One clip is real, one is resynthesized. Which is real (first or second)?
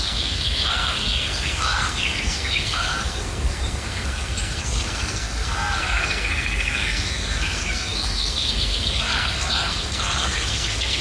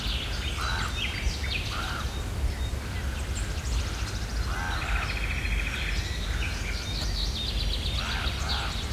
second